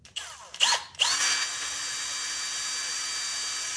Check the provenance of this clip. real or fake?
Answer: real